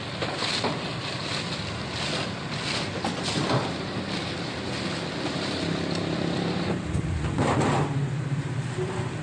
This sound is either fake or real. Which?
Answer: fake